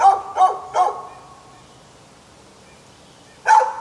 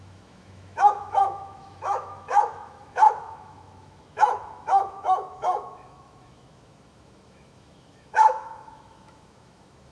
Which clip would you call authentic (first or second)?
first